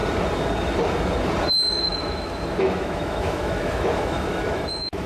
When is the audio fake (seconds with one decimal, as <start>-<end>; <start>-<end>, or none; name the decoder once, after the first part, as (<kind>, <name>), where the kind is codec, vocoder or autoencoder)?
1.9-5.1 (autoencoder, DAC-VAE)